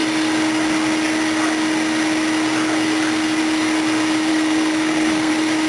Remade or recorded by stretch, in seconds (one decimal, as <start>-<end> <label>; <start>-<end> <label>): 0.0-4.3 recorded; 4.3-5.3 remade; 5.3-5.7 recorded